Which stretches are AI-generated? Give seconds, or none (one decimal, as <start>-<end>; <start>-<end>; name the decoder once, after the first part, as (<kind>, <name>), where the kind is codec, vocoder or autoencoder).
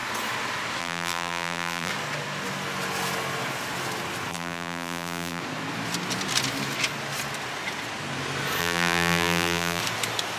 0.8-1.9 (vocoder, BigVGAN v2); 4.3-5.4; 8.6-9.8